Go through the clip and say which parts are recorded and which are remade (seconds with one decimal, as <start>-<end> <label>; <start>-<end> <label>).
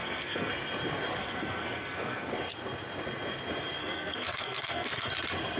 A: 0.0-0.5 remade; 0.5-1.2 recorded; 1.2-2.3 remade; 2.3-3.8 recorded; 3.8-5.1 remade; 5.1-5.6 recorded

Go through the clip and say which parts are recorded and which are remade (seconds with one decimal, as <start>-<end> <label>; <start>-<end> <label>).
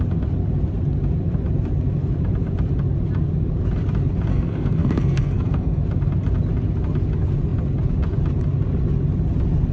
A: 0.0-4.3 recorded; 4.3-5.8 remade; 5.8-9.7 recorded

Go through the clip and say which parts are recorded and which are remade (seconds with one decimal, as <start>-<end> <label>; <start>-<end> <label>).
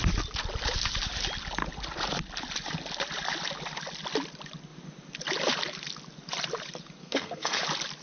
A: 0.0-7.0 recorded; 7.0-7.6 remade; 7.6-8.0 recorded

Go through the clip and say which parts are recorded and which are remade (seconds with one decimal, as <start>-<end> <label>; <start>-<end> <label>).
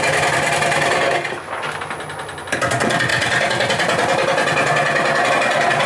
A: 0.0-5.9 recorded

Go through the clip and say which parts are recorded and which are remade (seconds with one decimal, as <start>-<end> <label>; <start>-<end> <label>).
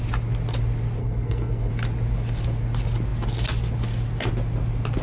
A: 0.0-1.0 recorded; 1.0-1.7 remade; 1.7-5.0 recorded